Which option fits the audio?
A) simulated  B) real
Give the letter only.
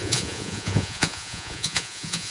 A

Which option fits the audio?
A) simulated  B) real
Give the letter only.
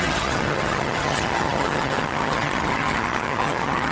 A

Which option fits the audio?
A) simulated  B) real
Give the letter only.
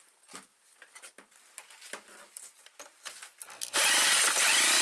B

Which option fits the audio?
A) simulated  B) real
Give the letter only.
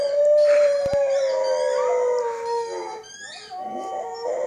B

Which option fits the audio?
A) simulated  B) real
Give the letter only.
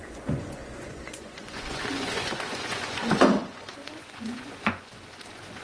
A